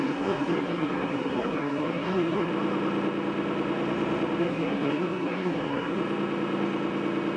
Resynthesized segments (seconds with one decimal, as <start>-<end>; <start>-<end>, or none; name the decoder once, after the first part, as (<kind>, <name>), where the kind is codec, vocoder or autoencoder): 0.0-2.5 (codec, SNAC); 4.4-6.0